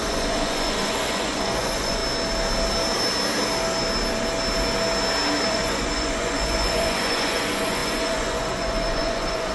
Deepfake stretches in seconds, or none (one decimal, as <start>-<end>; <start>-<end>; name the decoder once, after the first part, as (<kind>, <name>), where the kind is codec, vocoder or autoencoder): 0.0-2.0 (vocoder, Vocos); 5.5-9.5